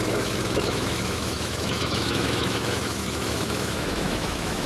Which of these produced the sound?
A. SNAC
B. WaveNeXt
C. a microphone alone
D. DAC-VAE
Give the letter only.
D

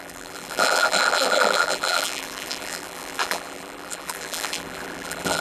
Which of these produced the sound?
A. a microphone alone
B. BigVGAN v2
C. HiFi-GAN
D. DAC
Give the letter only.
B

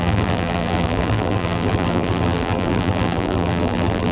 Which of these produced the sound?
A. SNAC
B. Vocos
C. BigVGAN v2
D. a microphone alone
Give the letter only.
C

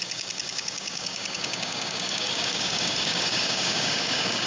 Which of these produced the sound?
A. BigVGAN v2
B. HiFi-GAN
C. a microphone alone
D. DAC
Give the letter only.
D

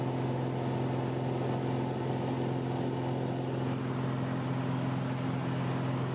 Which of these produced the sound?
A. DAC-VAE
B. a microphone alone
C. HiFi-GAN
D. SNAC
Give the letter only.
B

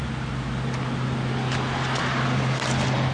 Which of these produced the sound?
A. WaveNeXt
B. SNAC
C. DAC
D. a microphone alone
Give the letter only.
D